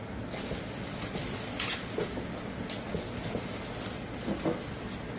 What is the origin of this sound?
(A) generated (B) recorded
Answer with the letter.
B